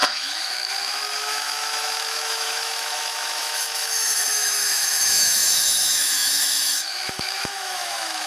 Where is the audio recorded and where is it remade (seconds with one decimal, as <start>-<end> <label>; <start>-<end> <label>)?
0.0-8.3 remade